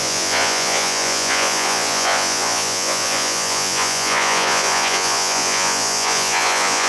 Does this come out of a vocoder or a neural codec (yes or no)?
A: yes